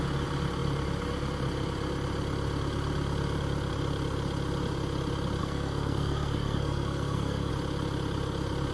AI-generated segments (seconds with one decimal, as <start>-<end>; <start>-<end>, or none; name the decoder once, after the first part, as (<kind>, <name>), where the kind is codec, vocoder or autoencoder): 5.4-7.5 (codec, SNAC)